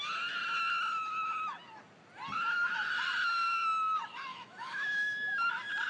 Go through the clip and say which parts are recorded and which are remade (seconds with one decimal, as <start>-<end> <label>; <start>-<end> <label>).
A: 0.0-4.3 recorded; 4.3-5.5 remade; 5.5-5.9 recorded